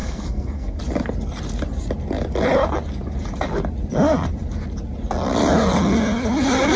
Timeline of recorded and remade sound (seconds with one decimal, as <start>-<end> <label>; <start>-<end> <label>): 0.0-0.8 remade; 0.8-6.8 recorded